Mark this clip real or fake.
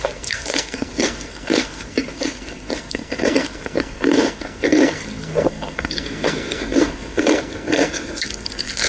fake